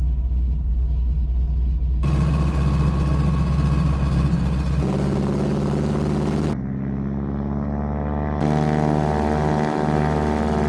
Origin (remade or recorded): recorded